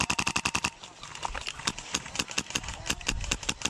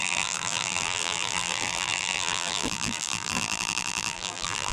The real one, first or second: first